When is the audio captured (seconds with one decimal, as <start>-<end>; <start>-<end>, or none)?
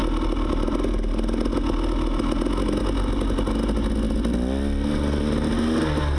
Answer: 0.0-6.2